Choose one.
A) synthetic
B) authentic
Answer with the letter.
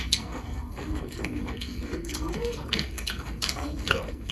A